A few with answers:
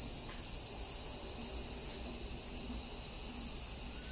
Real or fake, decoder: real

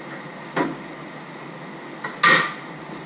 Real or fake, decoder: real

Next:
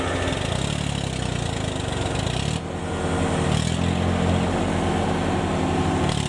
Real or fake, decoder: real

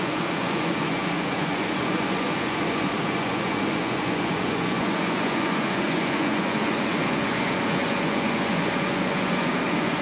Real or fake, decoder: fake, vocoder, Vocos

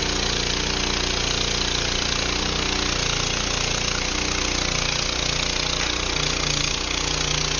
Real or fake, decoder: real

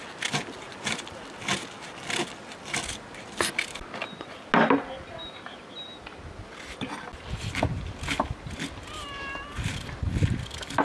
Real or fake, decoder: real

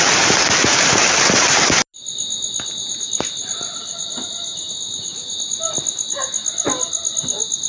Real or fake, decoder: real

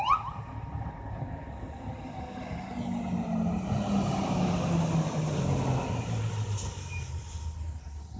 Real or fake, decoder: real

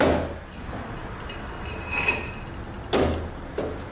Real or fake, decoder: real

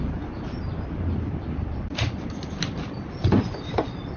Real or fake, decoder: real